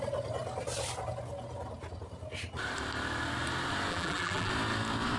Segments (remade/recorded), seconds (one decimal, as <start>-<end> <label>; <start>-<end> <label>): 0.0-3.9 recorded; 3.9-4.5 remade; 4.5-5.2 recorded